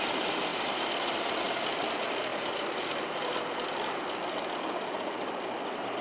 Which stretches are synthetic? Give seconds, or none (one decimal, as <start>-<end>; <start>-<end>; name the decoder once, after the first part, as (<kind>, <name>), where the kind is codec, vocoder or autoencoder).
none